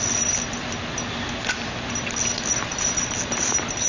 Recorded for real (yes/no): yes